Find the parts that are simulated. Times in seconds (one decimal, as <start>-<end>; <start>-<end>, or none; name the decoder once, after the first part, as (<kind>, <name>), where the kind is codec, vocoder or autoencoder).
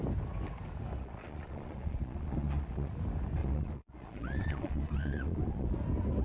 1.0-2.9 (vocoder, Vocos); 3.4-5.7